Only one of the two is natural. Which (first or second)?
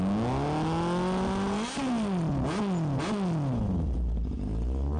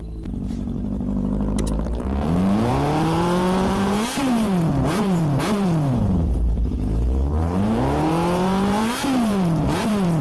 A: first